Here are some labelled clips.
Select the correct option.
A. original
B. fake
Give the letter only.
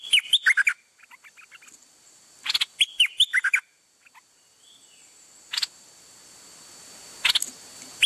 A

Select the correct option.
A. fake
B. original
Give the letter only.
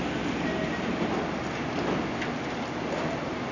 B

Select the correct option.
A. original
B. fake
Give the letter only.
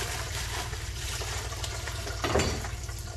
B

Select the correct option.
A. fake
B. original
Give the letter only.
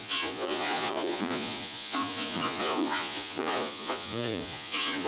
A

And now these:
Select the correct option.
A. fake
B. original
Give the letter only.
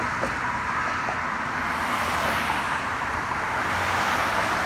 B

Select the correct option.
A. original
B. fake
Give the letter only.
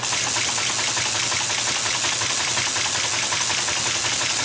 A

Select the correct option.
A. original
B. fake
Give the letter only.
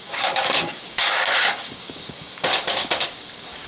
B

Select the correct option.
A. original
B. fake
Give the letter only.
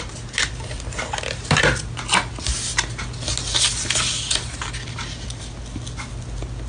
A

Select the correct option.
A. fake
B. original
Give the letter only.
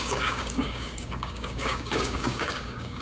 A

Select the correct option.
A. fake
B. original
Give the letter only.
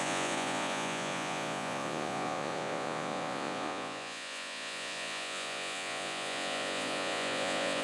A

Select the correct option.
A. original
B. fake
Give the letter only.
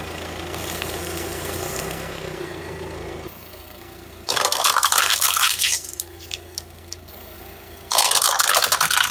B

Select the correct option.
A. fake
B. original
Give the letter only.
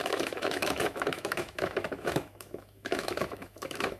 A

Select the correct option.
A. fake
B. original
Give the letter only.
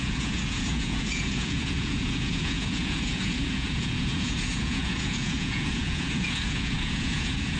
A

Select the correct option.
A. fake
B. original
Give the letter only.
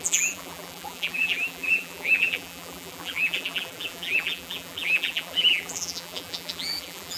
A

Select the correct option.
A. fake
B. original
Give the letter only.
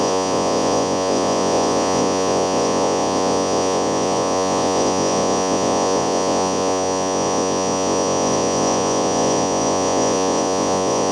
A